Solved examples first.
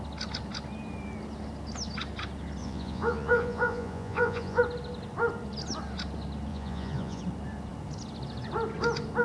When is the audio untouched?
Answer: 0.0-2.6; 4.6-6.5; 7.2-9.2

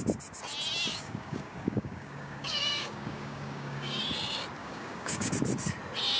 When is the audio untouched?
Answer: 0.0-0.9; 4.0-4.6; 5.3-6.2

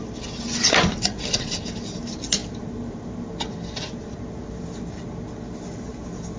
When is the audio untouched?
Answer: 0.0-6.4

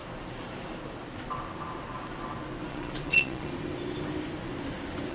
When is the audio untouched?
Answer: 0.0-2.7; 3.5-5.1